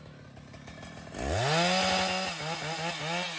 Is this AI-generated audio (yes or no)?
no